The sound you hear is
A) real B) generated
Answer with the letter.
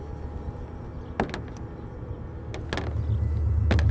A